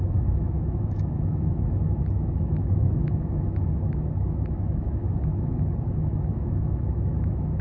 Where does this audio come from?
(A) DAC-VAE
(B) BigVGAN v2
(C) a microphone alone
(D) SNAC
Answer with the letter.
A